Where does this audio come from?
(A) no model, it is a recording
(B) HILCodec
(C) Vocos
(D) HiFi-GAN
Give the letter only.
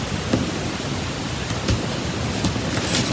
A